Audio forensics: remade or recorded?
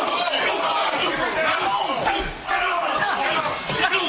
recorded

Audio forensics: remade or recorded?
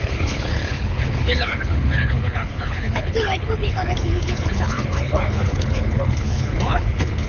remade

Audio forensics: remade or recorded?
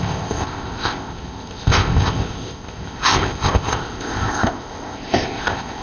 remade